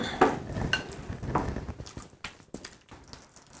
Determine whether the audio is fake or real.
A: real